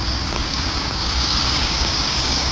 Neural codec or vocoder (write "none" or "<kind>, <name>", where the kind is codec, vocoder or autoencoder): codec, DAC